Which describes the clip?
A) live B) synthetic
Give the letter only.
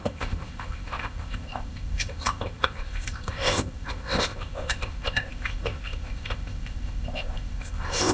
B